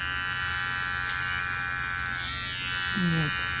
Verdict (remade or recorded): recorded